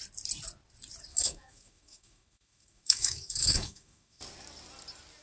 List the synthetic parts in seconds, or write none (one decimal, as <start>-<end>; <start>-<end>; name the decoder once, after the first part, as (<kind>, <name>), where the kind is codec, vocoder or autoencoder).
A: 1.1-4.2 (autoencoder, DAC-VAE)